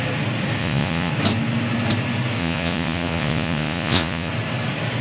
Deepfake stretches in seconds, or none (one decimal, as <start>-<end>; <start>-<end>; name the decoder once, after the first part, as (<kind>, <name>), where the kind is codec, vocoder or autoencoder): 0.6-1.1 (vocoder, Vocos); 2.4-4.3